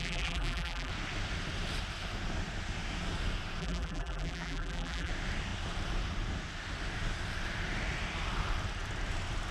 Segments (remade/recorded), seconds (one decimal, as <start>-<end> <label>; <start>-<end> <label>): 0.0-0.9 remade; 0.9-3.6 recorded; 3.6-5.1 remade; 5.1-9.5 recorded